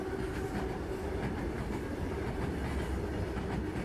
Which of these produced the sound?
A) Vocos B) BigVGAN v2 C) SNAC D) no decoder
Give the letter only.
D